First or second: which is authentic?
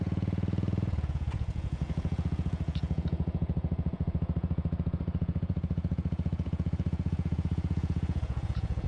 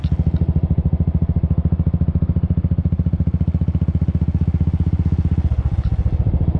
second